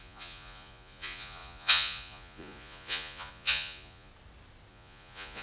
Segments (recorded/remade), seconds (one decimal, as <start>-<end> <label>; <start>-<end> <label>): 0.0-4.1 remade; 4.1-4.7 recorded; 4.7-5.4 remade